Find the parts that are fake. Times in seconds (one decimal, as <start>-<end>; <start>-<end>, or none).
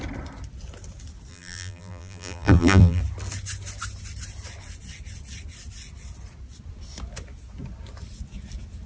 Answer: 1.3-3.0